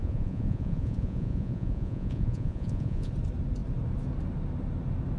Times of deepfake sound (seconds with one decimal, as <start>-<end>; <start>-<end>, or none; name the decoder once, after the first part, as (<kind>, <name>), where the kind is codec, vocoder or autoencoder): 0.0-3.1 (vocoder, Vocos)